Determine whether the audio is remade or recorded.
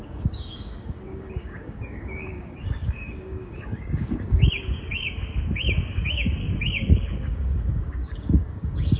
remade